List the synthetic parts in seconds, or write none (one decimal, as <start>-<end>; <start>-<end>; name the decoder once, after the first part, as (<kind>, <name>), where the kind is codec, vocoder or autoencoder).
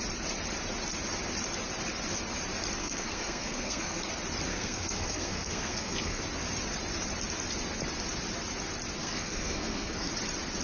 2.8-4.0 (codec, SNAC); 4.5-6.2; 9.0-10.1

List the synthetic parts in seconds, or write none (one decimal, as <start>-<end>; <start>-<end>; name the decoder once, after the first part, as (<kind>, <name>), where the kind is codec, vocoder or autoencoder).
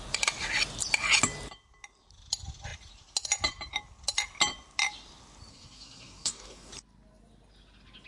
5.5-6.7 (codec, SNAC)